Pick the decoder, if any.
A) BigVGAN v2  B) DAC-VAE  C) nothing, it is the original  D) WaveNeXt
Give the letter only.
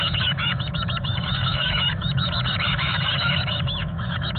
B